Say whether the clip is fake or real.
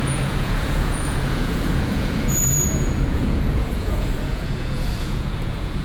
fake